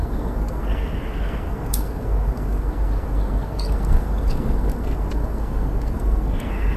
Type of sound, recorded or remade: remade